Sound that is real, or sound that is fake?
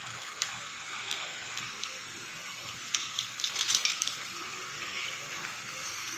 fake